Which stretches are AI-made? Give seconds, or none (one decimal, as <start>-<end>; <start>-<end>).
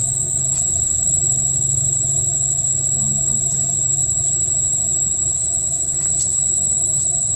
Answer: 0.8-2.7; 3.2-4.0